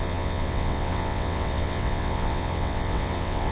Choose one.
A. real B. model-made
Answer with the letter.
B